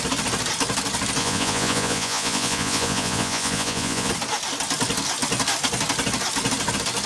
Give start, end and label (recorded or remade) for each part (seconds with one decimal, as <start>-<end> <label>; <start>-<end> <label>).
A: 0.0-1.2 recorded; 1.2-4.1 remade; 4.1-7.1 recorded